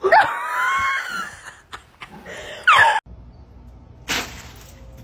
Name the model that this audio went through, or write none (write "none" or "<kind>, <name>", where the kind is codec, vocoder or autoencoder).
none